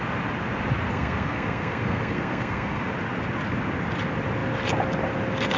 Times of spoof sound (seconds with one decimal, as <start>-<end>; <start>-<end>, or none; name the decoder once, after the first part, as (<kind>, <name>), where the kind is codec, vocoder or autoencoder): 0.9-2.9 (codec, SNAC)